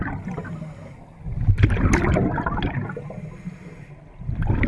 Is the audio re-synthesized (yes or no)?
no